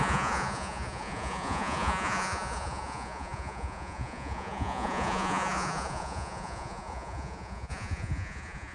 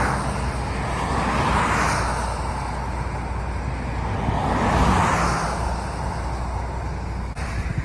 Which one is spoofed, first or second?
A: first